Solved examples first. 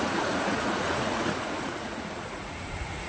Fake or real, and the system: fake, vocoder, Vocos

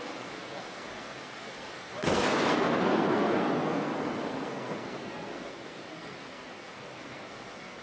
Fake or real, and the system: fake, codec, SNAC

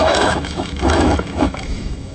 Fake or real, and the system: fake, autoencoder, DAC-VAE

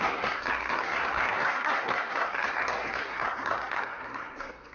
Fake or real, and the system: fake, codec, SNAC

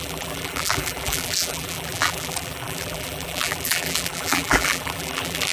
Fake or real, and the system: fake, vocoder, BigVGAN v2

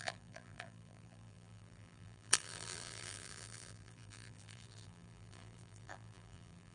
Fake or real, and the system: fake, vocoder, BigVGAN v2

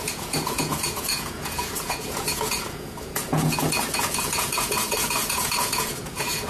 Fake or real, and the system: fake, vocoder, Vocos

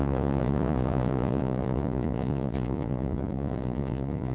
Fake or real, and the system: fake, vocoder, Vocos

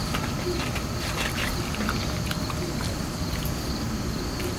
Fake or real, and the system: real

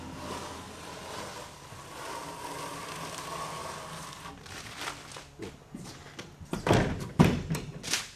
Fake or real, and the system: real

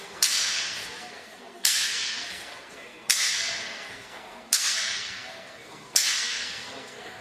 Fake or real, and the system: fake, codec, SNAC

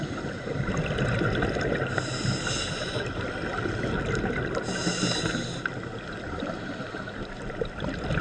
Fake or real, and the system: real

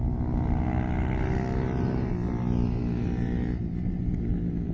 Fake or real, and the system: real